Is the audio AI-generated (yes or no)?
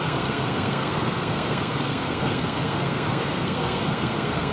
yes